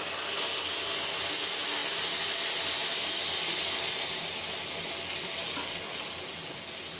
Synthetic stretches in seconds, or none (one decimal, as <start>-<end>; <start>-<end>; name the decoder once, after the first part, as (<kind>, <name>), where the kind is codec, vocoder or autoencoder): none